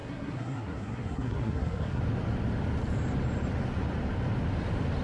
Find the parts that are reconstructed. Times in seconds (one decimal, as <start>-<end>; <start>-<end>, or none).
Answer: 0.0-2.0